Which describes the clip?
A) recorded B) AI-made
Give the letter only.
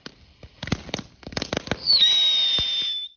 A